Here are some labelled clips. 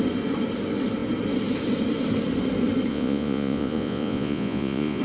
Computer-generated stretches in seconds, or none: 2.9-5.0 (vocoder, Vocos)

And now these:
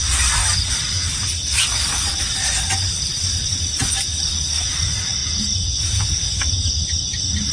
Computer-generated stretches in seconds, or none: 5.2-6.7 (vocoder, Vocos)

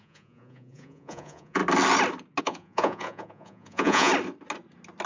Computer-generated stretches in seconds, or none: 0.0-1.6 (vocoder, Vocos); 2.4-4.1